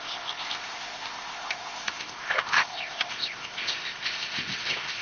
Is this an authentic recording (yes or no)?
no